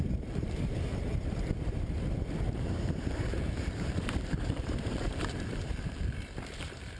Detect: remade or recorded remade